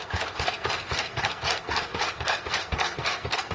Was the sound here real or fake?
fake